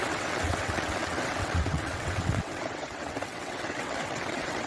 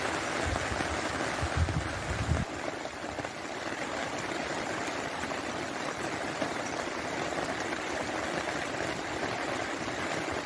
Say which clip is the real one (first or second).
second